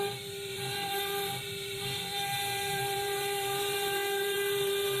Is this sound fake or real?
fake